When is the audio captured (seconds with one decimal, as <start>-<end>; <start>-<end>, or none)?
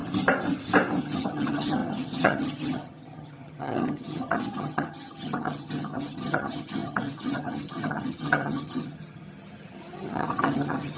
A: 0.0-1.0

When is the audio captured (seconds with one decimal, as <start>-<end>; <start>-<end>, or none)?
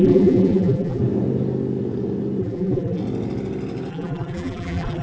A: 1.0-2.4; 3.0-3.9